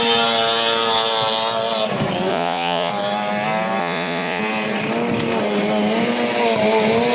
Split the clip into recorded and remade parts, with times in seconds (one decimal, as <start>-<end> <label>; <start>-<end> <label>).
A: 0.0-2.3 recorded; 2.3-2.9 remade; 2.9-3.8 recorded; 3.8-4.4 remade; 4.4-7.1 recorded

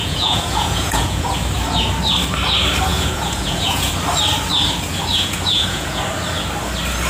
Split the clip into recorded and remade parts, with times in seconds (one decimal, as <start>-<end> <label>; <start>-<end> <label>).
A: 0.0-1.3 remade; 1.3-2.9 recorded; 2.9-3.9 remade; 3.9-5.1 recorded; 5.1-6.0 remade; 6.0-7.1 recorded